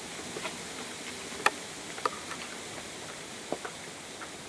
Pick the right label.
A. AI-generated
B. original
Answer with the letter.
B